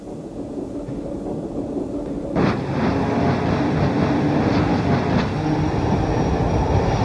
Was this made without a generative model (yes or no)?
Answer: yes